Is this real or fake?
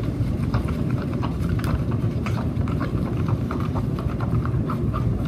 fake